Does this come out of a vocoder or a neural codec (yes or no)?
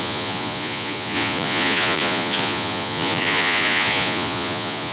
yes